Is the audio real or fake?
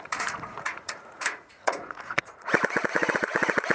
fake